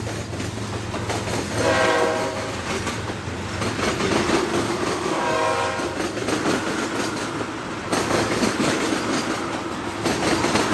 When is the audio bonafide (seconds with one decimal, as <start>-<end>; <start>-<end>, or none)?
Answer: 0.0-4.5; 5.6-8.0; 8.8-10.7